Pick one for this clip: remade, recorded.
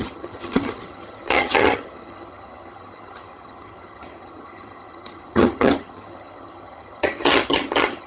remade